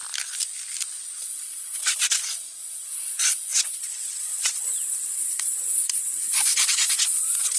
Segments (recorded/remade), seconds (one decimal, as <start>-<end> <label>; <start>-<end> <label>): 0.0-1.2 recorded; 1.2-7.6 remade